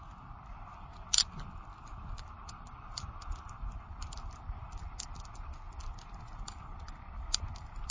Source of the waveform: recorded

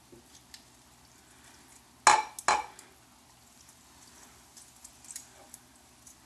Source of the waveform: recorded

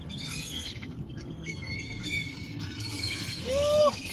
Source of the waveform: remade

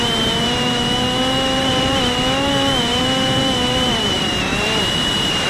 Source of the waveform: remade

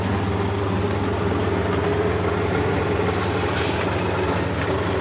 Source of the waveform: recorded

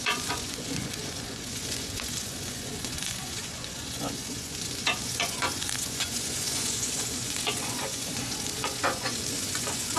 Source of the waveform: remade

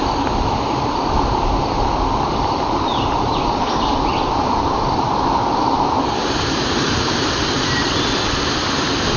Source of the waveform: remade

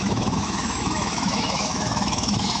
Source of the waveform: remade